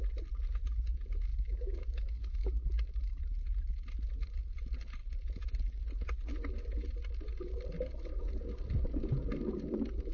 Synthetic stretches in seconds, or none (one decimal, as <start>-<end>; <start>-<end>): 1.3-3.2